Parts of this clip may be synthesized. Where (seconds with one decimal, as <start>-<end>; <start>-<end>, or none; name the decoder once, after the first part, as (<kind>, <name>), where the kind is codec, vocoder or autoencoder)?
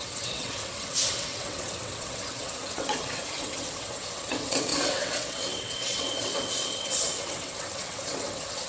0.0-8.7 (vocoder, WaveNeXt)